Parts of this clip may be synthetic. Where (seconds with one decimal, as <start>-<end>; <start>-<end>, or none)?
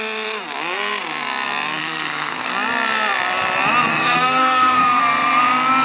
1.8-2.5; 3.9-5.0